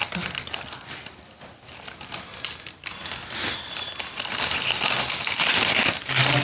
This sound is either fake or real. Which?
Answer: real